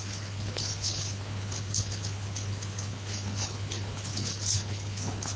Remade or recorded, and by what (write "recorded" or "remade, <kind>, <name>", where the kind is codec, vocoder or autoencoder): remade, codec, HILCodec